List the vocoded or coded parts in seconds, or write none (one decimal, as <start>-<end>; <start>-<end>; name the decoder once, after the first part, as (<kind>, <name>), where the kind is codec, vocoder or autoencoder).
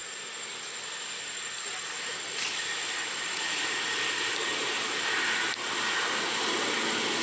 0.0-1.1 (vocoder, BigVGAN v2); 2.7-3.4